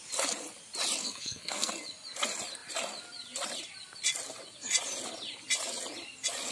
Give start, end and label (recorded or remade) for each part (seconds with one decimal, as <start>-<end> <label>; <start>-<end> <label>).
0.0-1.0 recorded; 1.0-1.7 remade; 1.7-6.5 recorded